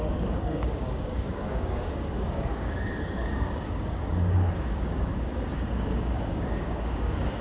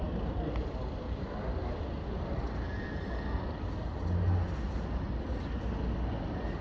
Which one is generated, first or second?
first